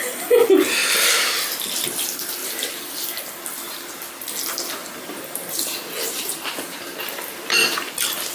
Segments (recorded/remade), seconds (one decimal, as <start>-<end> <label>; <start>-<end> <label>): 0.0-2.4 recorded; 2.4-3.2 remade; 3.2-4.8 recorded; 4.8-7.9 remade; 7.9-8.3 recorded